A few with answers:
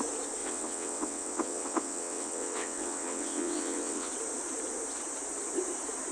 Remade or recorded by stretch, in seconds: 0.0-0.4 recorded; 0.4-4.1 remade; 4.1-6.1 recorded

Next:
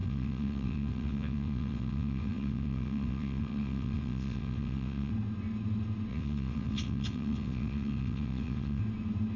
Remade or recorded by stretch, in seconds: 0.0-5.1 remade; 5.1-6.1 recorded; 6.1-8.8 remade; 8.8-9.4 recorded

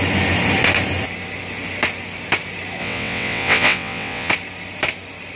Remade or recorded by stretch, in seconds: 0.0-2.8 recorded; 2.8-4.3 remade; 4.3-5.4 recorded

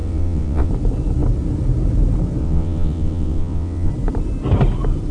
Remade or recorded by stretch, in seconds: 0.0-0.7 remade; 0.7-2.4 recorded; 2.4-3.9 remade; 3.9-5.1 recorded

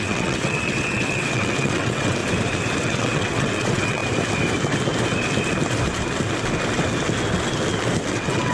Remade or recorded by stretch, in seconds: 0.0-2.2 remade; 2.2-2.8 recorded; 2.8-4.0 remade; 4.0-8.1 recorded; 8.1-8.5 remade